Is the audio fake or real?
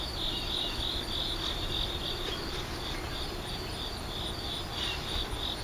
real